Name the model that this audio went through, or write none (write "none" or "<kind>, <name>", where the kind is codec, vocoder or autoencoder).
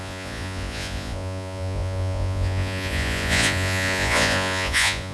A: vocoder, Vocos